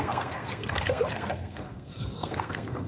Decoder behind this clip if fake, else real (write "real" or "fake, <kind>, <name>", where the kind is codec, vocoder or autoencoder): fake, codec, SNAC